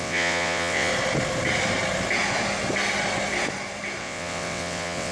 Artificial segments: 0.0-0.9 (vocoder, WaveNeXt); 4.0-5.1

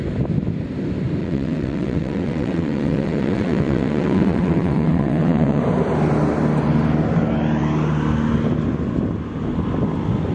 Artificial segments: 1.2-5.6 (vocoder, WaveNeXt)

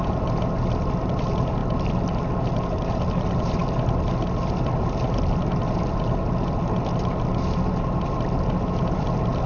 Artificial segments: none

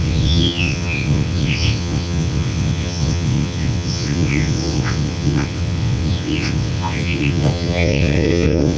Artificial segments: 0.0-8.8 (vocoder, WaveNeXt)

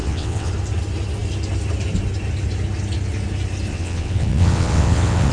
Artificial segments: 0.0-0.5 (vocoder, WaveNeXt); 3.7-5.3

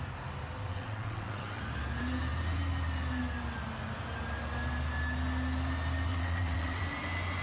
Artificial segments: 0.7-1.6 (vocoder, WaveNeXt); 6.1-6.8